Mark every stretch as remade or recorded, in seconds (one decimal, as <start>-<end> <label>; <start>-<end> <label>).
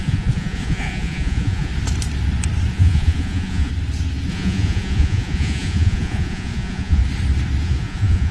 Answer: 0.0-1.7 remade; 1.7-2.7 recorded; 2.7-3.7 remade; 3.7-4.3 recorded; 4.3-7.0 remade; 7.0-7.6 recorded; 7.6-8.3 remade